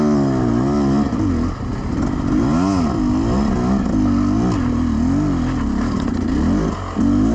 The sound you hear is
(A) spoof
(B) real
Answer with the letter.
B